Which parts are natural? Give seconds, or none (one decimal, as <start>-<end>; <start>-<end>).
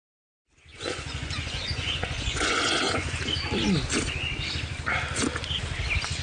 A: 0.0-0.7; 3.2-6.2